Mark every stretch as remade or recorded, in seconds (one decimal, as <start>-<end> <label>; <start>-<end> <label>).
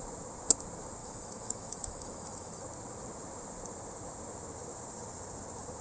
0.0-1.0 recorded; 1.0-2.6 remade; 2.6-5.8 recorded